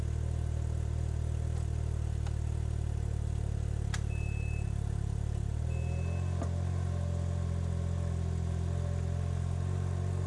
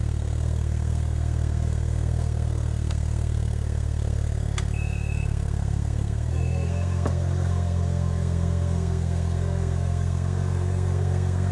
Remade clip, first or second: second